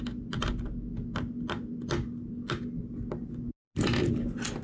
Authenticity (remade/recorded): recorded